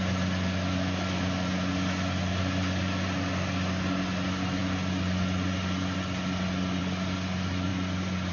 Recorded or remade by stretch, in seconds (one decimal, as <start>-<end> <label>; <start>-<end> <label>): 0.0-8.3 recorded